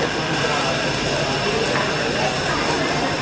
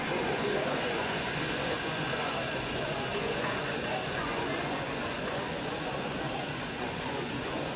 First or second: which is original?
first